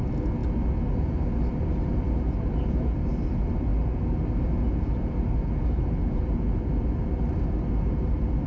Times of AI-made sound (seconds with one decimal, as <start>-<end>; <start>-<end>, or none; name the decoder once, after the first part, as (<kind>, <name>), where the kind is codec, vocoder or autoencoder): none